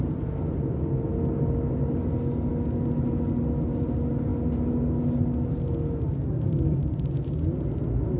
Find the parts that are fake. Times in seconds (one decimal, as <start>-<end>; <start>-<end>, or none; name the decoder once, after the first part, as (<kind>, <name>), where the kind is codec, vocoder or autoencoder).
none